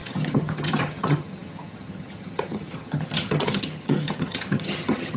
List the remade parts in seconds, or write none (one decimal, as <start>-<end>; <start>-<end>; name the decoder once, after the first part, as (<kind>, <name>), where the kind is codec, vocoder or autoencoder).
0.0-5.2 (vocoder, HiFi-GAN)